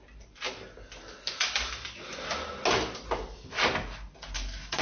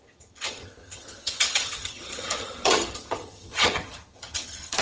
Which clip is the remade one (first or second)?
second